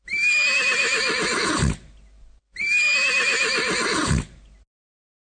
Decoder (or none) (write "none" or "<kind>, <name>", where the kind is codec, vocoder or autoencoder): none